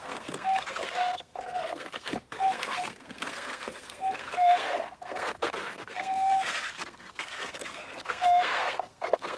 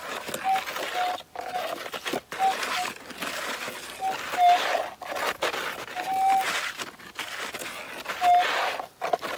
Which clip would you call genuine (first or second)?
second